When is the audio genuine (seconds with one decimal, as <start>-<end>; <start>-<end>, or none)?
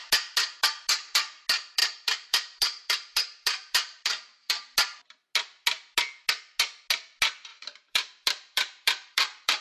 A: 0.0-1.8; 4.5-7.5